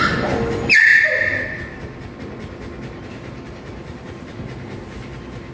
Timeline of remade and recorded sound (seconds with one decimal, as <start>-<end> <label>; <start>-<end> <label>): 0.0-5.5 recorded